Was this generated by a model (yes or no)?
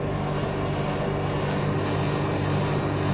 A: no